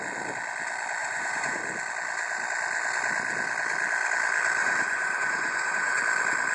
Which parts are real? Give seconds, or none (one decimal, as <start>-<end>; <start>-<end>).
0.0-1.0; 1.6-4.6; 6.0-6.5